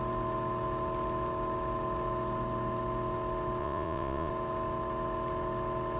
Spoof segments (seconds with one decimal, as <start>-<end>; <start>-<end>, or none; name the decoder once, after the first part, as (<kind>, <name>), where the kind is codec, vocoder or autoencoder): 3.6-4.3 (vocoder, Vocos)